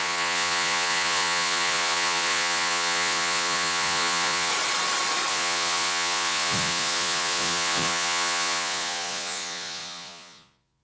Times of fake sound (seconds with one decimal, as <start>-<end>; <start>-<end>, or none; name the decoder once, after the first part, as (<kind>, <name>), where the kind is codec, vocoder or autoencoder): 0.0-4.5 (vocoder, Vocos); 5.3-10.8